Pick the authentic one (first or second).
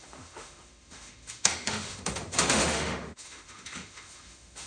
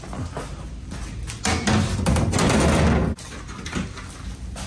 second